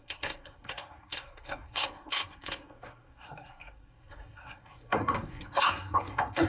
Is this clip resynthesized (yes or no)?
yes